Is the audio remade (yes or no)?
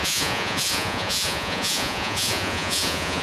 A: yes